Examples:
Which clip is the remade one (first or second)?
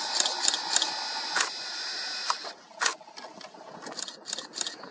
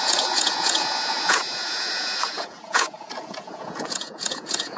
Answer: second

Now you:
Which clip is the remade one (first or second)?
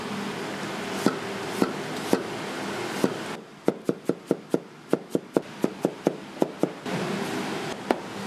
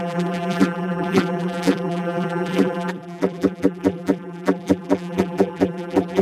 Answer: second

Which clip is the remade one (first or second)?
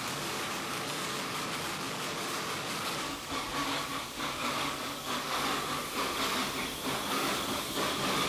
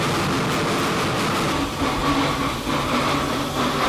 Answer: first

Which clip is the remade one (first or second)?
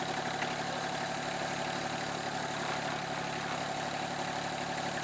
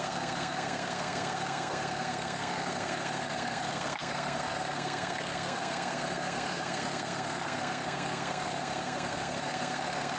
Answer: second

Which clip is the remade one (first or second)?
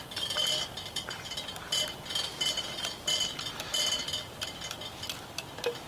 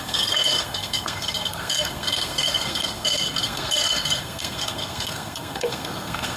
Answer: second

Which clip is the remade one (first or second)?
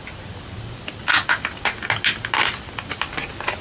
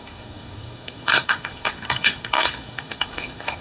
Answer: second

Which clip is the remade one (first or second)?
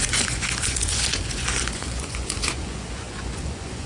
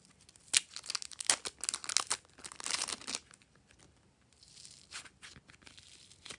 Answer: first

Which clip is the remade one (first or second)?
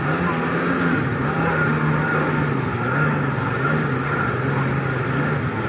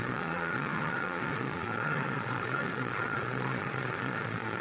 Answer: second